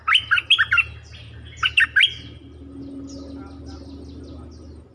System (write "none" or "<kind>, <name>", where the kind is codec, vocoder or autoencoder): none